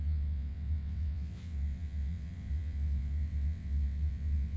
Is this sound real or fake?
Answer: fake